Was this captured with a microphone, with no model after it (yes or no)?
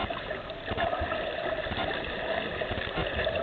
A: yes